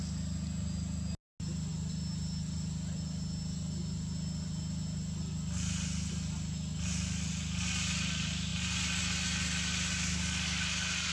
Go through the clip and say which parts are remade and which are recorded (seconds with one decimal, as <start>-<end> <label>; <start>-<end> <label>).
0.0-11.1 recorded